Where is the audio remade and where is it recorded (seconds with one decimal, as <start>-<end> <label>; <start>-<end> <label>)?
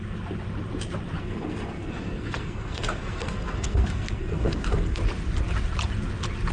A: 0.0-1.2 recorded; 1.2-5.0 remade; 5.0-6.5 recorded